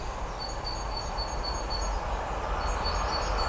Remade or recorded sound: recorded